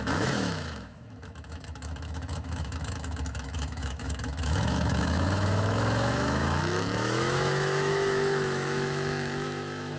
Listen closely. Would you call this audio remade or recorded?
remade